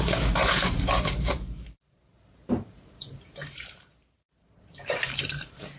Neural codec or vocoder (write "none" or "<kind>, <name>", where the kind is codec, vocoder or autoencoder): vocoder, BigVGAN v2